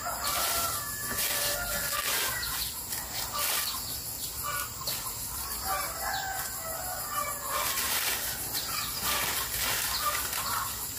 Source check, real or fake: real